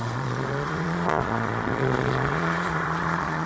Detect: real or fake fake